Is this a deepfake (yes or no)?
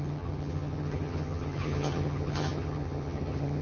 yes